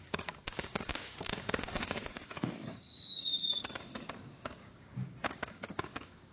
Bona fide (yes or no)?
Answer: no